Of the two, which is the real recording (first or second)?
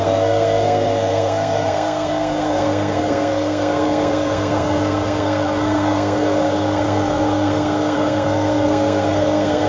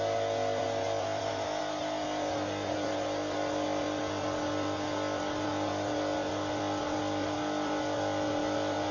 second